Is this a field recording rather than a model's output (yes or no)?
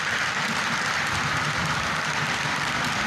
no